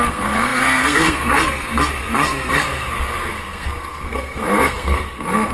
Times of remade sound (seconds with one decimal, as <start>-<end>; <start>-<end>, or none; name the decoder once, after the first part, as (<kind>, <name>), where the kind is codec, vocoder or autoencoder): 0.0-5.5 (codec, SNAC)